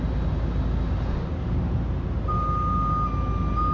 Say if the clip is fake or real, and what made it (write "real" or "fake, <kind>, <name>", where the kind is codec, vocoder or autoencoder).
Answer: real